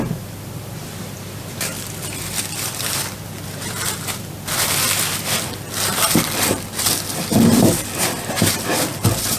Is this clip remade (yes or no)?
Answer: yes